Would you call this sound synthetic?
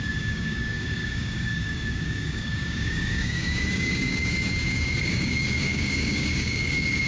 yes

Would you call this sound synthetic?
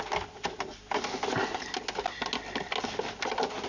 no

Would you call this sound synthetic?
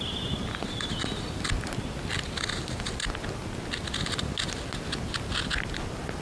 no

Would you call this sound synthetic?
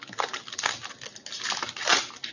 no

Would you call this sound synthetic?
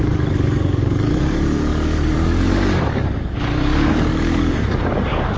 yes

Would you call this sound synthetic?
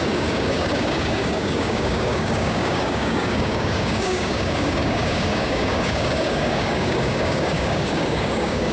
yes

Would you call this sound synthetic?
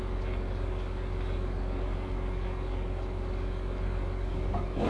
yes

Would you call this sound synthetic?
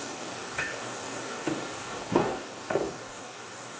yes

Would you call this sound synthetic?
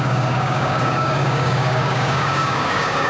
yes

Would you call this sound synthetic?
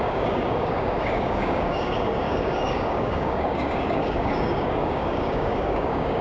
yes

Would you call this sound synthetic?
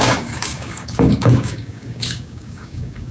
yes